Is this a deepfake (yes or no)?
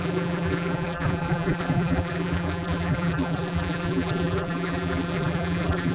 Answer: yes